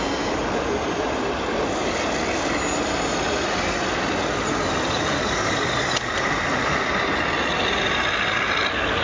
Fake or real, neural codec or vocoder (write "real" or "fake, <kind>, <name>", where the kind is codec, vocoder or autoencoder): real